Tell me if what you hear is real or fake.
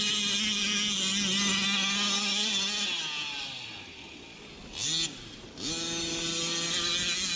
real